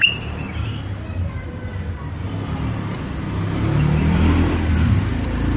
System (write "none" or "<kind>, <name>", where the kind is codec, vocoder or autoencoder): vocoder, BigVGAN v2